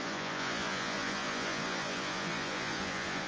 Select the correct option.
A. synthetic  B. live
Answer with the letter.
A